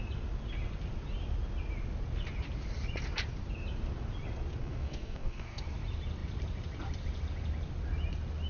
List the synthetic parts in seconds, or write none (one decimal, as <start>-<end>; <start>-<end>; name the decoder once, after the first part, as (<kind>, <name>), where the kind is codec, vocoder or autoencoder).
4.6-5.6 (codec, SNAC)